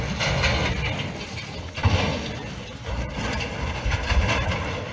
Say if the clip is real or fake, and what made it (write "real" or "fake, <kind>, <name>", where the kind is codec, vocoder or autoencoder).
real